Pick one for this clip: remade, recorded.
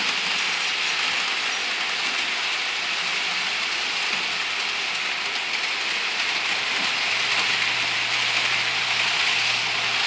recorded